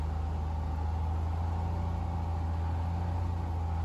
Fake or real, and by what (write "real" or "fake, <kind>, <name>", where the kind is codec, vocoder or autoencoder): real